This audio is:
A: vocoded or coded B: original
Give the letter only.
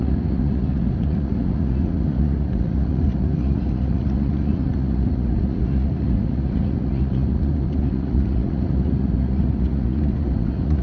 A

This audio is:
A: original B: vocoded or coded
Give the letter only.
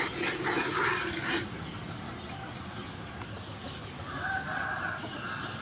A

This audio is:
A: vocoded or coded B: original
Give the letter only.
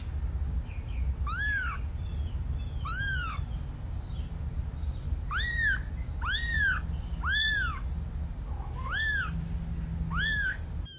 B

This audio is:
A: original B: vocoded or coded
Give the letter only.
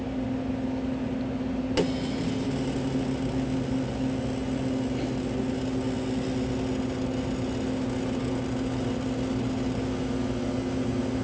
A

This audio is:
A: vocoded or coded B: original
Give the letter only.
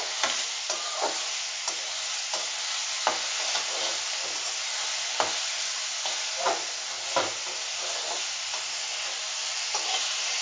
B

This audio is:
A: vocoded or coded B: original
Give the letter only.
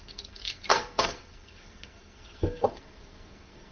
A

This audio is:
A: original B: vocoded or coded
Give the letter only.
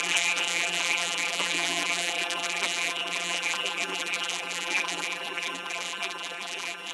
B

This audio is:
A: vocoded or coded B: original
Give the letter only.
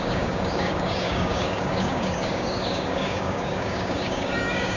A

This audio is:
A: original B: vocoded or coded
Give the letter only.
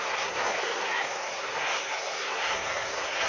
B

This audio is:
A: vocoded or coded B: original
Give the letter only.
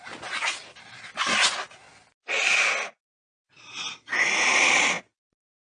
B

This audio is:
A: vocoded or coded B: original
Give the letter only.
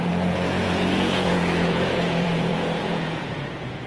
A